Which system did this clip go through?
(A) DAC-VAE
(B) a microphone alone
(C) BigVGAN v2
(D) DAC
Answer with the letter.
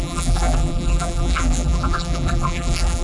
C